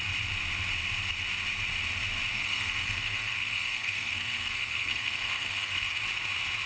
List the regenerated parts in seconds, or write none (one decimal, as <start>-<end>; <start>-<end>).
2.3-6.0